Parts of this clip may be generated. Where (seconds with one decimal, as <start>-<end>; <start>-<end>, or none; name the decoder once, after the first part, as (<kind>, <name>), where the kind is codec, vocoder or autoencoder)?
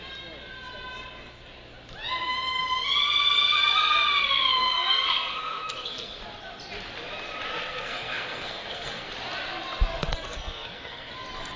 4.2-6.2 (codec, SNAC); 7.5-9.1; 10.1-11.1